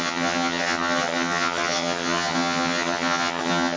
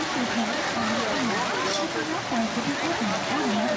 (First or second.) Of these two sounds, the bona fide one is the second